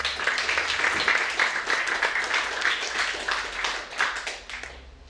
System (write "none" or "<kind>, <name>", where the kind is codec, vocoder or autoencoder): none